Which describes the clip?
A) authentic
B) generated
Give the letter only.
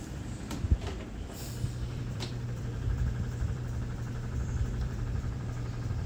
B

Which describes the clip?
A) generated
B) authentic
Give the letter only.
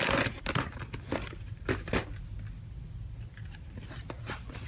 B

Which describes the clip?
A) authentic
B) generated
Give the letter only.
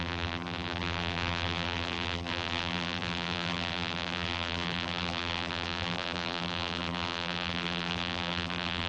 B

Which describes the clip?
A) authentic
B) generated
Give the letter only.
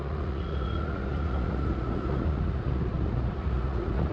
B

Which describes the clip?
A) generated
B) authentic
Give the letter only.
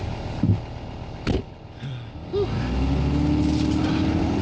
B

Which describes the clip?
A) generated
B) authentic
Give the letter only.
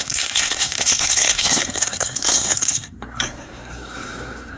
A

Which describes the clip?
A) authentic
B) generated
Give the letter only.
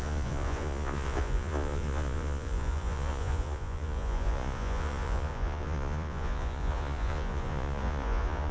B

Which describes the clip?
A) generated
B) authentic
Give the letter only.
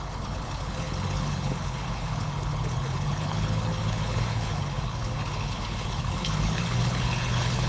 A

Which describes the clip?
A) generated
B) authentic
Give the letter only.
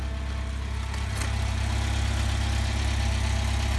B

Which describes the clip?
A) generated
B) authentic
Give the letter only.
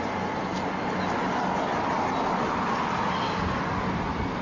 B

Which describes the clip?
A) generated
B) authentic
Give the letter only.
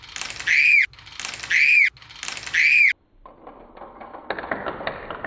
B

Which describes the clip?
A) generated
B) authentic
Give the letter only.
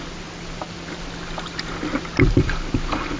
B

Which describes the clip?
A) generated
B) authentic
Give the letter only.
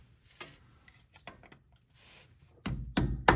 B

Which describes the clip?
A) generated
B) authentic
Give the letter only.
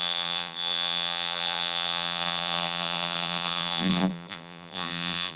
A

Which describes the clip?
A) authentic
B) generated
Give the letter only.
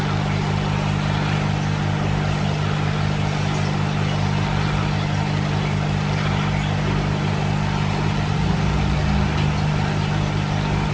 A